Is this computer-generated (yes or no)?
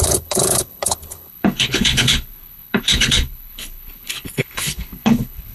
yes